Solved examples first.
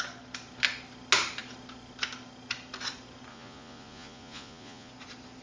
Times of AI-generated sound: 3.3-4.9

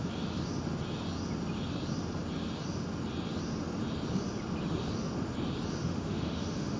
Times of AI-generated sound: 5.8-6.8